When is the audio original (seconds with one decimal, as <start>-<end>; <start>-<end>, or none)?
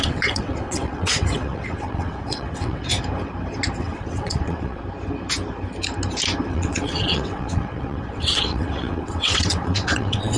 2.9-3.8; 4.8-6.5